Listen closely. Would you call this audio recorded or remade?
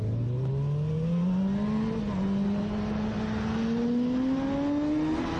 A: recorded